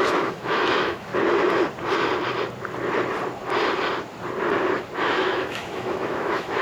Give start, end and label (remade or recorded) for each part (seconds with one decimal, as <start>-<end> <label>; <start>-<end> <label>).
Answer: 0.0-1.1 remade; 1.1-5.1 recorded; 5.1-6.6 remade